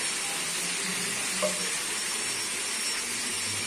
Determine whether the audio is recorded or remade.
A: recorded